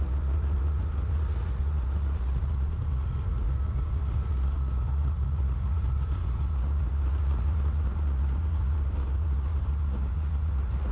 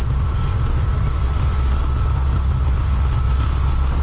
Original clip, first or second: second